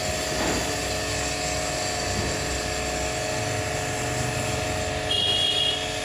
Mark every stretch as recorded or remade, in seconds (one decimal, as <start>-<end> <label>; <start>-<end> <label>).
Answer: 0.0-6.0 recorded